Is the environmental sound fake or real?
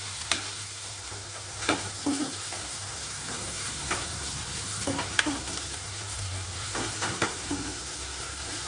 fake